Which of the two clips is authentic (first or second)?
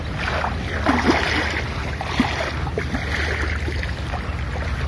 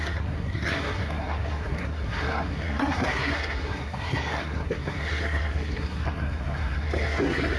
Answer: first